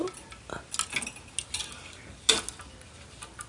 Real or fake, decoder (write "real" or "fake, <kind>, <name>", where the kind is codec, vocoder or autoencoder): real